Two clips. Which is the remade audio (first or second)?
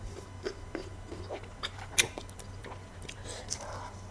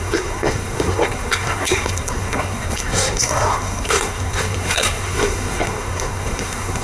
second